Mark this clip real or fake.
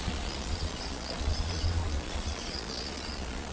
fake